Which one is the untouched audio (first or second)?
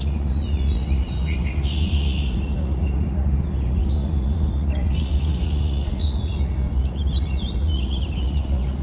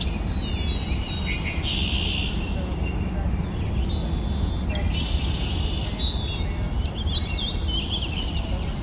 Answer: second